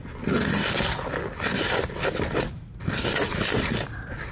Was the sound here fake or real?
real